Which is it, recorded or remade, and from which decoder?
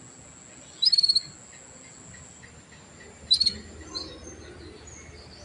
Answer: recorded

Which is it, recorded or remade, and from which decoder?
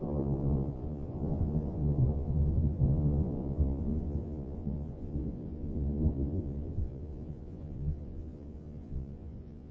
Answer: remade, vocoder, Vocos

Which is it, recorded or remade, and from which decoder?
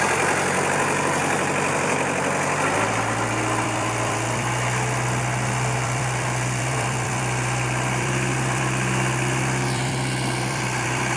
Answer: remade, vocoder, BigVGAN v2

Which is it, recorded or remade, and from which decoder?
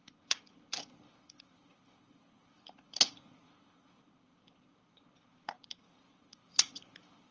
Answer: remade, codec, HILCodec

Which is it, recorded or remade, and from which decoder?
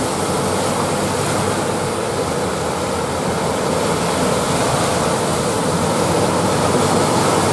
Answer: recorded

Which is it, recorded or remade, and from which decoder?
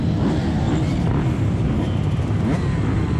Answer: recorded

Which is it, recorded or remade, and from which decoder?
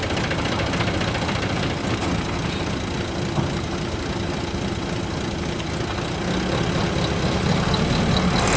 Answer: recorded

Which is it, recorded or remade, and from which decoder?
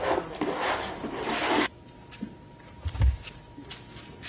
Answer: recorded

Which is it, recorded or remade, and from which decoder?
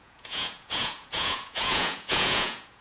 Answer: remade, vocoder, Vocos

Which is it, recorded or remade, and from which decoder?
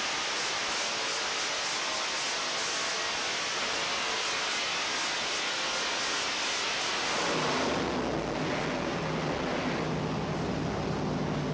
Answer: recorded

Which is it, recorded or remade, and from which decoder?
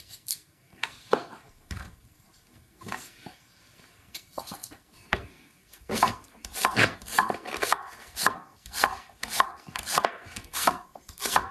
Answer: remade, codec, SNAC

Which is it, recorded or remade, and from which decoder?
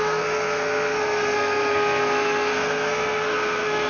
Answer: remade, codec, SNAC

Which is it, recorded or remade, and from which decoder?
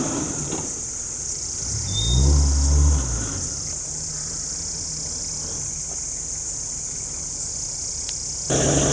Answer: recorded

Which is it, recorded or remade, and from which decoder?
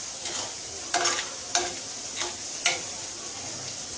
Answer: recorded